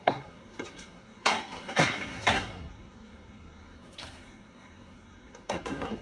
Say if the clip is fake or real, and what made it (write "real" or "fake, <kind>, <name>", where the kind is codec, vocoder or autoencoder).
fake, codec, SNAC